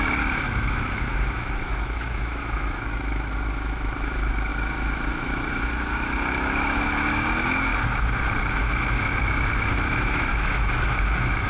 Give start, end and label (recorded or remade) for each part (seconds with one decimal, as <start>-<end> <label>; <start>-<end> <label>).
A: 0.0-7.7 remade; 7.7-8.5 recorded; 8.5-11.5 remade